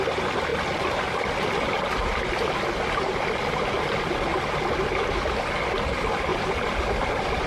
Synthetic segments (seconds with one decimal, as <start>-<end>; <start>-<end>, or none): 6.3-7.1